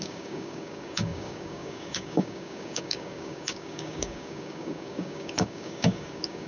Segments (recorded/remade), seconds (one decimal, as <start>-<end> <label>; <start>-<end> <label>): 0.0-6.5 remade